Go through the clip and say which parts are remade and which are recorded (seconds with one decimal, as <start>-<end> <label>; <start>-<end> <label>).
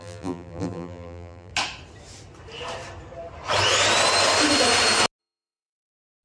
0.0-1.5 remade; 1.5-5.2 recorded; 5.2-6.2 remade